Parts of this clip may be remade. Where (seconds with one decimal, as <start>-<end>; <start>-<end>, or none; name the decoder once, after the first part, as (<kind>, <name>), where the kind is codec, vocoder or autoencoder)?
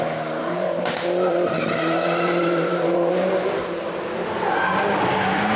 0.4-3.8 (vocoder, BigVGAN v2)